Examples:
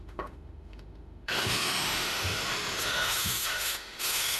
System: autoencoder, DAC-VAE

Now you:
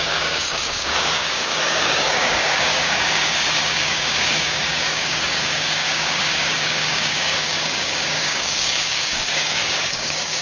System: codec, DAC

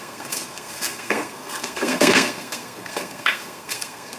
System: codec, SNAC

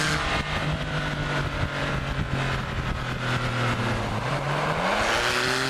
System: none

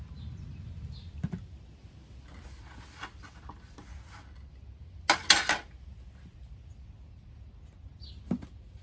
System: none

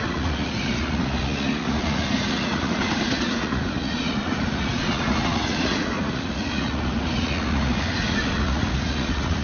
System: vocoder, Vocos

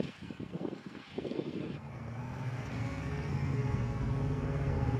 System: codec, SNAC